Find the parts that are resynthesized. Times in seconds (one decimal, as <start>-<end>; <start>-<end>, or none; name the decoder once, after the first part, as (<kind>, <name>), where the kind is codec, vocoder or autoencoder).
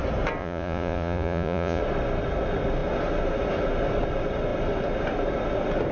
0.4-1.8 (vocoder, Vocos)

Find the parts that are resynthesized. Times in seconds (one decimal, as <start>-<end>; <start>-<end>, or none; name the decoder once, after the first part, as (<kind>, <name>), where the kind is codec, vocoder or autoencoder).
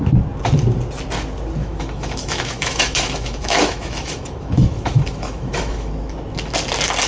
1.6-5.9 (autoencoder, DAC-VAE)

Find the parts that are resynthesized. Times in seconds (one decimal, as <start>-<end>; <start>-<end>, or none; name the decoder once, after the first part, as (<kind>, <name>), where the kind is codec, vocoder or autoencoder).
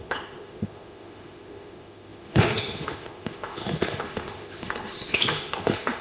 0.0-6.0 (autoencoder, DAC-VAE)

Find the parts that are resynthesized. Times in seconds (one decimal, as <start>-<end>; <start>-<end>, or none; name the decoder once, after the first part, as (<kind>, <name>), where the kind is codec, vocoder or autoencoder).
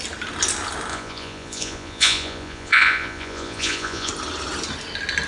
0.9-4.1 (vocoder, Vocos)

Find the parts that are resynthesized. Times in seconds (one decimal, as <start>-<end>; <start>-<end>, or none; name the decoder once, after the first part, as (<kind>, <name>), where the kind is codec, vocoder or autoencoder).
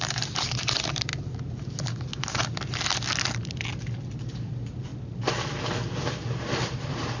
0.0-1.1 (vocoder, BigVGAN v2); 4.2-4.9; 6.0-7.2